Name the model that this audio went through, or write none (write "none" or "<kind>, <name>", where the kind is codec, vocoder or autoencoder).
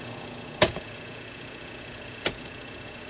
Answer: vocoder, Vocos